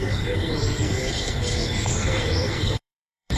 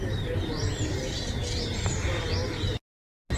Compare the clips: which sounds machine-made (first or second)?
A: first